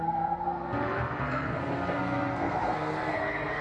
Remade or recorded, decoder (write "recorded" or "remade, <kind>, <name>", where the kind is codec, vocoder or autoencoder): remade, codec, SNAC